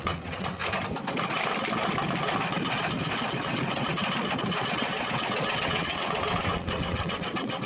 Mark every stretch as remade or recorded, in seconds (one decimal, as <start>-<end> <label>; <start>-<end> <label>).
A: 0.0-0.6 remade; 0.6-3.3 recorded; 3.3-4.0 remade; 4.0-4.7 recorded; 4.7-7.7 remade